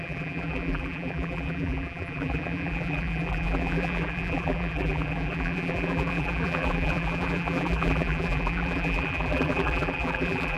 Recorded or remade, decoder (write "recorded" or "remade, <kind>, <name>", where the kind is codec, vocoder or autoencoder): remade, vocoder, BigVGAN v2